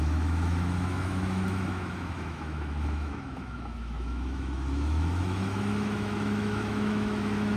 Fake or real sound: fake